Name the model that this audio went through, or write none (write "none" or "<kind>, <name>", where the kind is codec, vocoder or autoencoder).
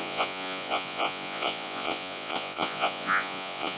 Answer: vocoder, Vocos